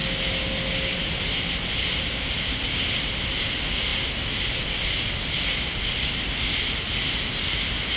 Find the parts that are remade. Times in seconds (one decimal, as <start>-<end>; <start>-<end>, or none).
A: none